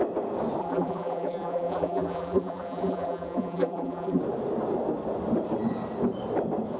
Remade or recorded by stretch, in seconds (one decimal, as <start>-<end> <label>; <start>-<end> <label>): 0.0-0.6 recorded; 0.6-4.2 remade; 4.2-6.8 recorded